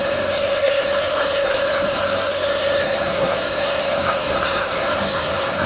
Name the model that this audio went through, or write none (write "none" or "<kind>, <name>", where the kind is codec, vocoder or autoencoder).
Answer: codec, SNAC